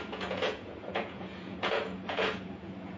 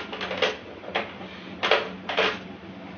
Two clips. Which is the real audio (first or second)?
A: second